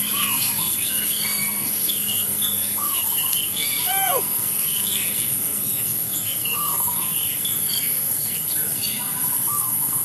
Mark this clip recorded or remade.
remade